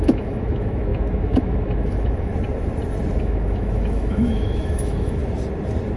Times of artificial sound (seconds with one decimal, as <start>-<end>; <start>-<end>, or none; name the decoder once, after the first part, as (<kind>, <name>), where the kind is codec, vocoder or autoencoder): 0.0-2.3 (autoencoder, DAC-VAE); 3.2-5.2